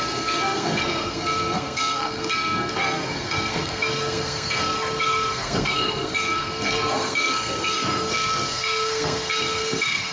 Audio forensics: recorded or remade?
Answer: remade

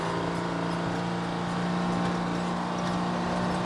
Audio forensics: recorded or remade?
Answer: recorded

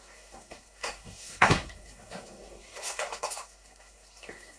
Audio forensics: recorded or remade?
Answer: remade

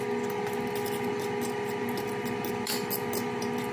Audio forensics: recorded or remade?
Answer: recorded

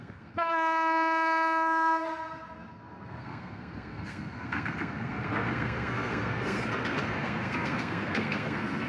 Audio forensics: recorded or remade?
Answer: remade